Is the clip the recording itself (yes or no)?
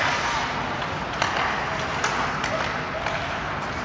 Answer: yes